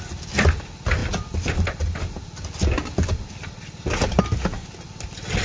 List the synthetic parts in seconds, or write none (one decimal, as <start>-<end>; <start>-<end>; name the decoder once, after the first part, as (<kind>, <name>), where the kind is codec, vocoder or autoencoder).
none

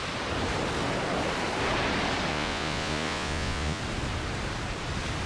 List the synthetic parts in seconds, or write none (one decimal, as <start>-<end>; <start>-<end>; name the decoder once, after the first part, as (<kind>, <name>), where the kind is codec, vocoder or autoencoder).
2.3-3.8 (vocoder, Vocos)

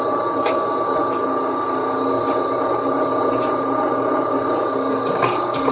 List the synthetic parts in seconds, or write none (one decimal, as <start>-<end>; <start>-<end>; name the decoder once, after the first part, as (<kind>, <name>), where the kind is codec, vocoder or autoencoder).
none

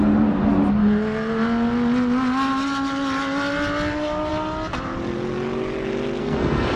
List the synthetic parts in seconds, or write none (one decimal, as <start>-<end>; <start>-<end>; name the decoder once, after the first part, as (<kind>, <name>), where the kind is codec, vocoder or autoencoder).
6.2-6.8 (codec, SNAC)

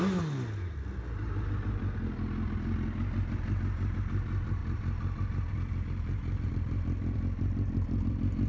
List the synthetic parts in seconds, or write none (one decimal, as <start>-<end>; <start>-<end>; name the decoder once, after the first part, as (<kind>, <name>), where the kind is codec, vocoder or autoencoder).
none

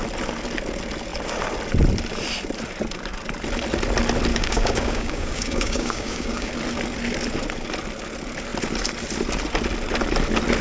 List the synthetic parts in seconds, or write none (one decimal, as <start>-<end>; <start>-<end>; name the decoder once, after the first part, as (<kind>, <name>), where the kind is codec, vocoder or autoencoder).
4.3-6.5 (codec, DAC)

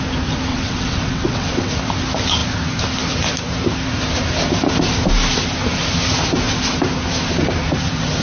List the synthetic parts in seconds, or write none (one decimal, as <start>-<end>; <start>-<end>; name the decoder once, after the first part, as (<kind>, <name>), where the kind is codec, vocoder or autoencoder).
0.5-1.7 (vocoder, WaveNeXt)

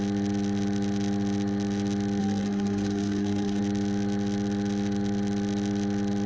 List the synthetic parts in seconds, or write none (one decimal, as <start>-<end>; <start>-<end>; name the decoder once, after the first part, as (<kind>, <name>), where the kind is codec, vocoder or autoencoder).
2.2-3.6 (codec, SNAC)